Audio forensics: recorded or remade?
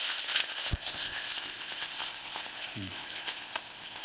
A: remade